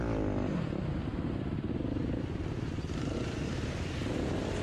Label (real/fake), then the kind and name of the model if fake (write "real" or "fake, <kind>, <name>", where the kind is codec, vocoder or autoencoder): fake, vocoder, BigVGAN v2